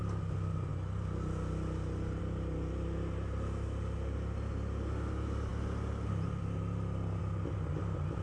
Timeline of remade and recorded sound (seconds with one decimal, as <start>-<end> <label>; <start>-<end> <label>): 0.0-8.2 recorded